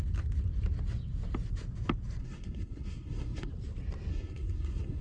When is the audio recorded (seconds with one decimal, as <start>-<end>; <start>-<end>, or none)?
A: 0.0-2.2; 3.5-4.1